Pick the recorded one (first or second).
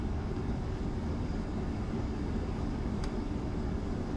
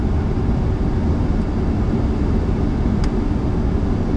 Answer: second